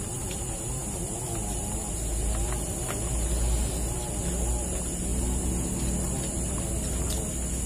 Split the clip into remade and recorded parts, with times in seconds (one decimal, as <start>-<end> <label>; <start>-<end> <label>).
0.0-7.7 recorded